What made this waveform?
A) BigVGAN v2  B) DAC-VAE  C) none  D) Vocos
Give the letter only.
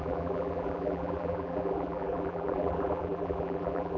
A